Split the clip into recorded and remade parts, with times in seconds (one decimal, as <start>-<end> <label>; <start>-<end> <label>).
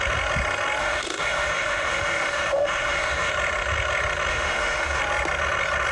0.0-0.8 recorded; 0.8-3.3 remade; 3.3-4.3 recorded; 4.3-5.0 remade; 5.0-5.9 recorded